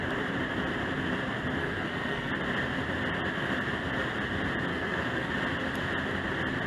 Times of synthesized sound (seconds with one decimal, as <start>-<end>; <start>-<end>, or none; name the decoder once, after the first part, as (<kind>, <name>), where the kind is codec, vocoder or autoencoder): 1.6-2.3 (codec, SNAC); 4.7-5.3